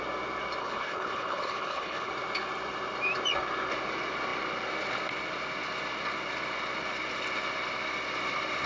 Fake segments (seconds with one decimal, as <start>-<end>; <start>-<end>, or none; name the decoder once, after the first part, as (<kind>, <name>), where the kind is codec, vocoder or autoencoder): 0.6-2.1 (codec, HILCodec)